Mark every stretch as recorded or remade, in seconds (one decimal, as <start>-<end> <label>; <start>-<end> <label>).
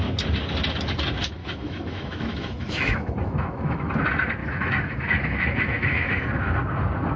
0.0-1.4 recorded; 1.4-3.9 remade; 3.9-4.4 recorded; 4.4-6.3 remade; 6.3-7.2 recorded